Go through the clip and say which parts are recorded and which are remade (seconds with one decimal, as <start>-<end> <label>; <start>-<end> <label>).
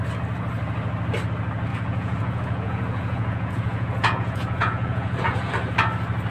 0.0-1.7 recorded; 1.7-5.5 remade; 5.5-6.3 recorded